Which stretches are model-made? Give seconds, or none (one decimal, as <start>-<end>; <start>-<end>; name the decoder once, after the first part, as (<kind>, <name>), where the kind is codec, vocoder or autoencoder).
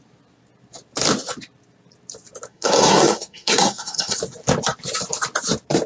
2.5-4.2 (codec, SNAC)